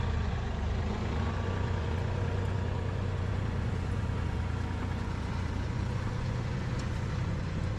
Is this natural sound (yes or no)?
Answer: no